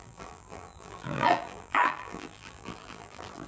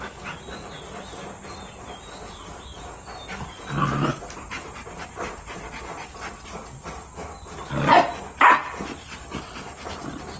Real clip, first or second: second